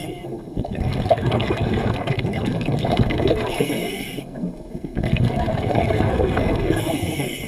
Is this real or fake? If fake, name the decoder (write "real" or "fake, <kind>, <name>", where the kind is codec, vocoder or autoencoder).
fake, codec, SNAC